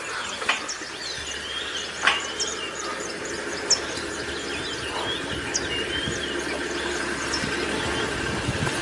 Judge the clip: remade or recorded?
recorded